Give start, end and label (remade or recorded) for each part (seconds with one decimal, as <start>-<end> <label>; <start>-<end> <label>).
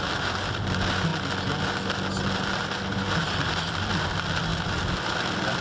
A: 0.0-5.6 recorded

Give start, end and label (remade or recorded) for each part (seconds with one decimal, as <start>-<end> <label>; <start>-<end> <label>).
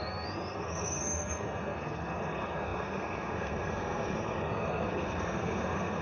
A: 0.0-6.0 remade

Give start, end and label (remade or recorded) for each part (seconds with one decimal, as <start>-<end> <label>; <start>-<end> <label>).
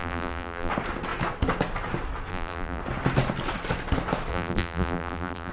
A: 0.0-0.7 remade; 0.7-2.3 recorded; 2.3-2.8 remade; 2.8-4.3 recorded; 4.3-5.5 remade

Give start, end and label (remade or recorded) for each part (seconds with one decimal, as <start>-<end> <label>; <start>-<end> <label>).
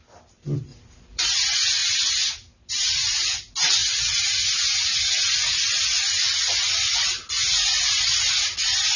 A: 0.0-9.0 recorded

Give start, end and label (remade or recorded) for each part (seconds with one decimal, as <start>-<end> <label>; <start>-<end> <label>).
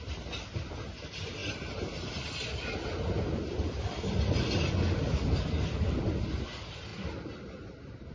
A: 0.0-8.1 recorded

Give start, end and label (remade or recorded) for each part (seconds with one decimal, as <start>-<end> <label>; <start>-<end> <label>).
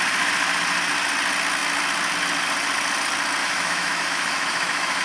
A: 0.0-3.4 recorded; 3.4-5.0 remade